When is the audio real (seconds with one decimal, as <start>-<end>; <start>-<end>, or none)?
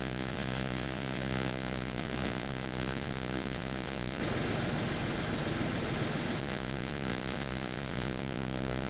4.2-6.4